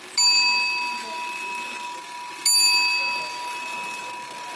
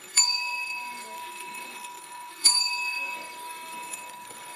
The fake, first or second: second